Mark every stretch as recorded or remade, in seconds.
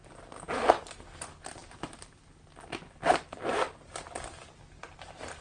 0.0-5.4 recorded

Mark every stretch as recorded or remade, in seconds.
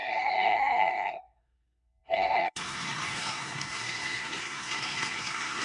0.0-5.6 remade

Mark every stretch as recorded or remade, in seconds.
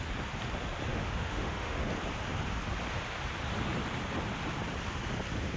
0.0-0.9 recorded; 0.9-1.9 remade; 1.9-5.6 recorded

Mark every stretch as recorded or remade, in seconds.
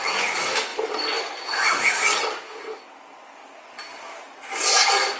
0.0-5.2 recorded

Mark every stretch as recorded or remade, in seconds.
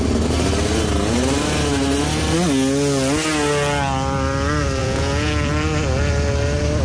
0.0-4.8 recorded; 4.8-5.3 remade; 5.3-6.8 recorded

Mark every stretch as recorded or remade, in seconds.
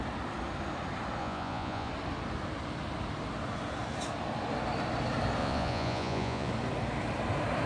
0.0-1.2 recorded; 1.2-1.9 remade; 1.9-5.4 recorded; 5.4-6.5 remade; 6.5-7.7 recorded